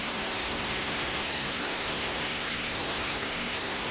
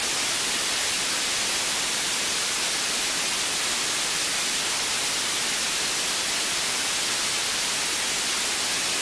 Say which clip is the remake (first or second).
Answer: first